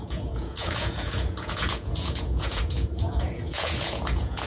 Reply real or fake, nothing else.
fake